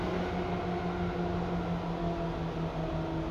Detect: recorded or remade recorded